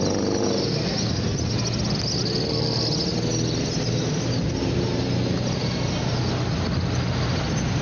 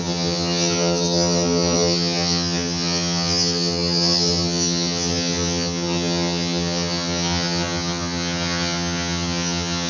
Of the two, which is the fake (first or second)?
second